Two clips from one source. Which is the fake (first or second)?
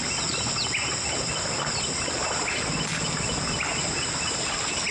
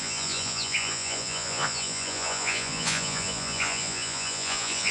second